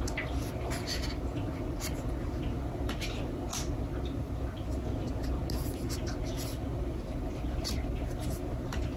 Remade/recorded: recorded